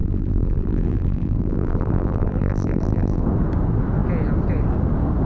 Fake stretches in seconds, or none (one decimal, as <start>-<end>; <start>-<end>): 0.0-3.2